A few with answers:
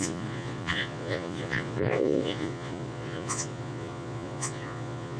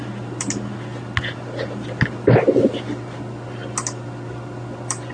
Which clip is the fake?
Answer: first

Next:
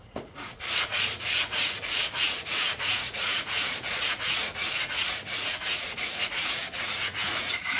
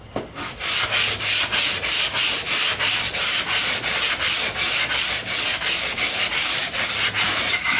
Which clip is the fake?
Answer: first